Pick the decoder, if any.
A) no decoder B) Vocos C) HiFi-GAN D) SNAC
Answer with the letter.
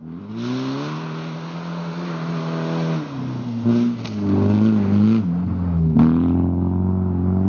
A